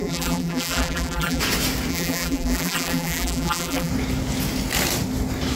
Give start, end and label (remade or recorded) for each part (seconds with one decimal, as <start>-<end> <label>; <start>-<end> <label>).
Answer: 0.0-1.4 remade; 1.4-1.9 recorded; 1.9-3.9 remade; 3.9-5.6 recorded